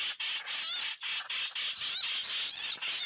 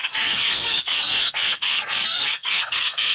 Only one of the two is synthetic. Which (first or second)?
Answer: second